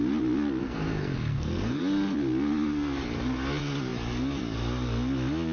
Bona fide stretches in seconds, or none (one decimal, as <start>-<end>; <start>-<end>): 0.0-0.6; 1.8-5.5